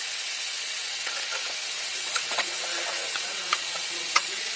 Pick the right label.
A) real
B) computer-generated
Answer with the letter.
B